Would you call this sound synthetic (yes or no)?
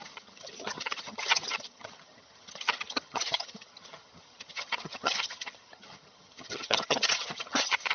yes